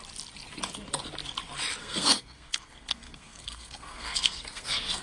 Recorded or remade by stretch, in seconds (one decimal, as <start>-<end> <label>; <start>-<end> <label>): 0.0-1.8 recorded; 1.8-5.0 remade